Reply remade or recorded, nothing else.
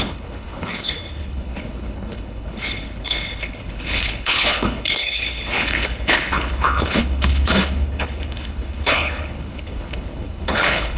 remade